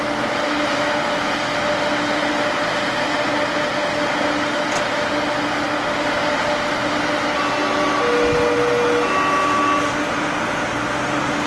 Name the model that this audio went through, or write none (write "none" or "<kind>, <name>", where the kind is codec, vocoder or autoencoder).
none